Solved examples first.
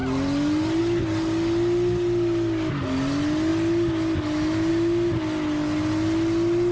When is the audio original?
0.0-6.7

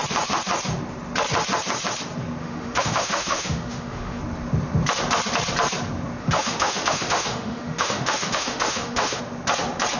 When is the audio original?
0.0-2.4; 4.2-6.2; 9.2-10.0

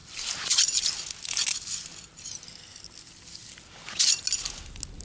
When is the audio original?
0.0-5.0

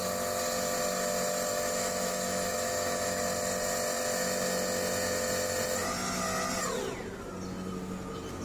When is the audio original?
0.0-1.5; 3.2-8.4

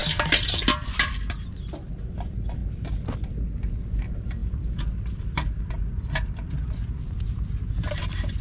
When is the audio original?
0.0-8.4

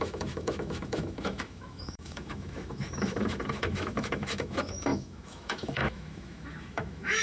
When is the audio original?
none